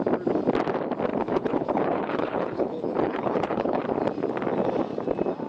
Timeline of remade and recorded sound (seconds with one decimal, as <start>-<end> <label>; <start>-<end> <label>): 0.0-1.1 recorded; 1.1-3.8 remade; 3.8-5.5 recorded